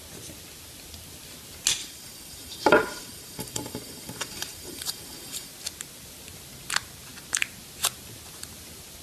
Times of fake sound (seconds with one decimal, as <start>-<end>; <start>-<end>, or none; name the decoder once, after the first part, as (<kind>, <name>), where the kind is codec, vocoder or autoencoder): 1.8-5.5 (vocoder, BigVGAN v2)